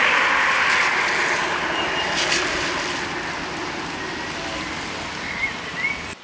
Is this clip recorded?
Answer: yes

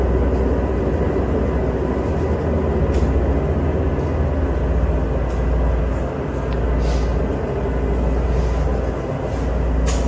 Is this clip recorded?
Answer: yes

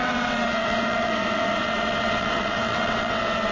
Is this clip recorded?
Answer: no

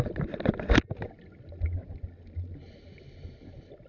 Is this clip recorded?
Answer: yes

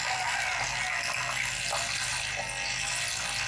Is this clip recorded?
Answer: yes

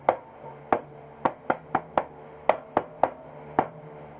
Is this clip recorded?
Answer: yes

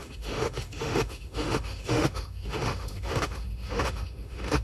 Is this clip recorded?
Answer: no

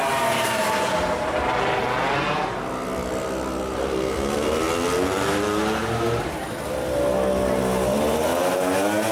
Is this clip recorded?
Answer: yes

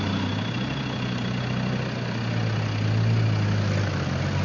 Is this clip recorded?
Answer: yes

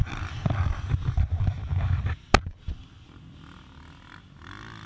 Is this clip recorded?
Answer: yes